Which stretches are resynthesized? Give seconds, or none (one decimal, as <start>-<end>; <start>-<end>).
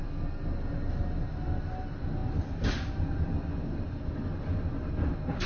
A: none